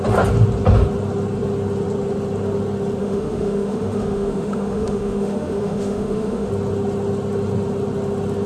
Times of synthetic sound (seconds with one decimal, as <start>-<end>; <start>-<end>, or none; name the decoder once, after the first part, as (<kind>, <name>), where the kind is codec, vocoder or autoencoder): 3.0-6.5 (autoencoder, DAC-VAE)